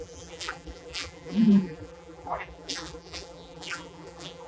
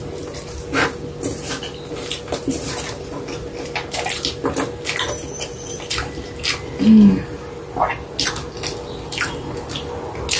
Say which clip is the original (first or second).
second